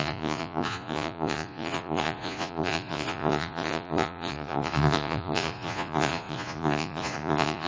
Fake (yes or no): yes